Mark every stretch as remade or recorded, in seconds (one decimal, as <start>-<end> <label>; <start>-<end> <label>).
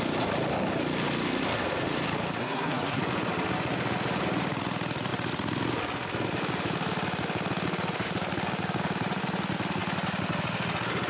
0.0-2.4 recorded; 2.4-3.0 remade; 3.0-11.1 recorded